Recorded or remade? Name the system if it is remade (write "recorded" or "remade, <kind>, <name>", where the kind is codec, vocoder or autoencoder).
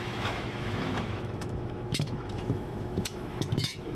remade, autoencoder, DAC-VAE